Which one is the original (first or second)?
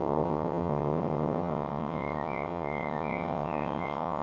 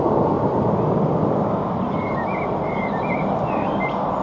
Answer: second